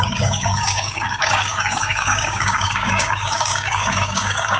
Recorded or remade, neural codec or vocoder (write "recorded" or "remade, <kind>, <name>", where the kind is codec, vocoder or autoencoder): remade, codec, DAC